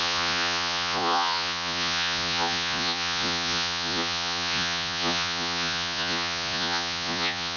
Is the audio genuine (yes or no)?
no